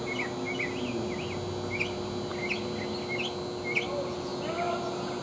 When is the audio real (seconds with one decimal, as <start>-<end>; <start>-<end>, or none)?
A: 0.0-5.2